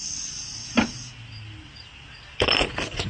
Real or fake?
real